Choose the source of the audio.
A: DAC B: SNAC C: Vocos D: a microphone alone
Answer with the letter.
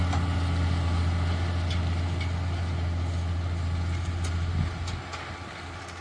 D